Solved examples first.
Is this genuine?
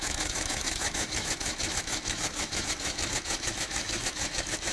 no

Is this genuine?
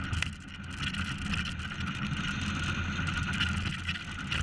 yes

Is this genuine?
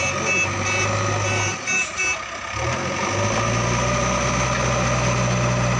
yes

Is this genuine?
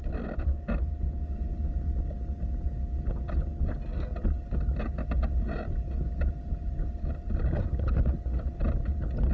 yes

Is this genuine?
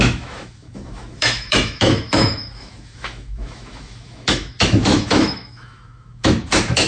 no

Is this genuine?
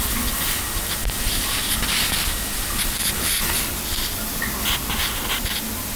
yes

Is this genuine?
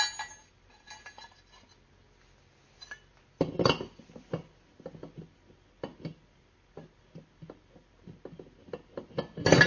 yes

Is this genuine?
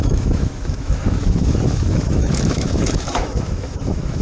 no